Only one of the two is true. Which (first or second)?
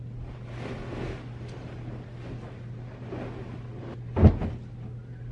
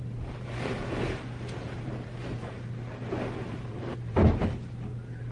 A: first